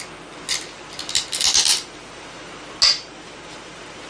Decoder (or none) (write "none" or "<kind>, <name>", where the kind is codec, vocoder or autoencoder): none